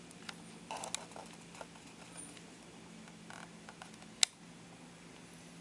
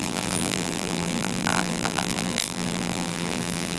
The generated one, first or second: second